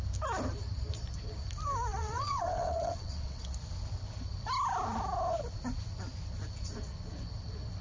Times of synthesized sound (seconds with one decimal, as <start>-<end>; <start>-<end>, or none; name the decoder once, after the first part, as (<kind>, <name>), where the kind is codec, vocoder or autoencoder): 1.9-3.5 (vocoder, WaveNeXt)